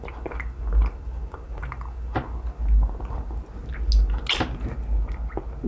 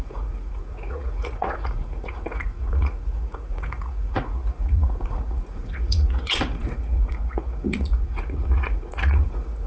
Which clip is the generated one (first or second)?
second